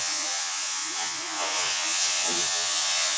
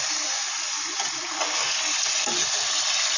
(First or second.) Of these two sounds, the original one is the second